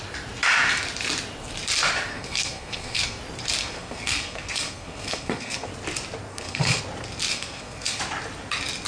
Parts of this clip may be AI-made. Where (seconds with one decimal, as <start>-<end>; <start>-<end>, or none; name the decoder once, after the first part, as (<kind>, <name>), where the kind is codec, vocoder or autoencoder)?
2.1-3.2 (codec, SNAC); 3.6-5.7; 6.3-6.8; 7.3-8.0